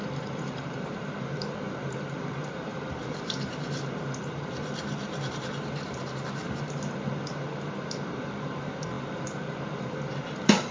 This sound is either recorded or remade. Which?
remade